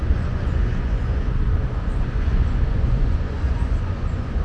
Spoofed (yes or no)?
yes